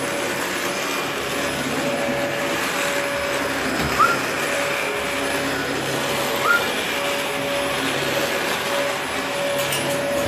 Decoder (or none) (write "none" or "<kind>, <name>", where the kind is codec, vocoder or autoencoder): none